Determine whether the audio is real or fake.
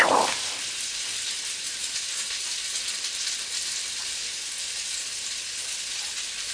real